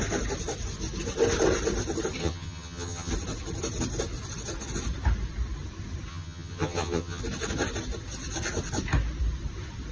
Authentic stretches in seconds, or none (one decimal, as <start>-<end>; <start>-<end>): 0.0-2.2; 3.1-6.1; 7.2-9.9